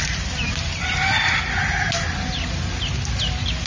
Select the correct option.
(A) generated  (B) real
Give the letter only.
B